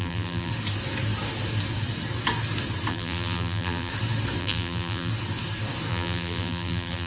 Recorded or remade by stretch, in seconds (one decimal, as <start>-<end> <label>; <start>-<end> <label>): 0.0-0.5 remade; 0.5-2.9 recorded; 2.9-3.9 remade; 3.9-4.4 recorded; 4.4-5.1 remade; 5.1-5.9 recorded; 5.9-7.1 remade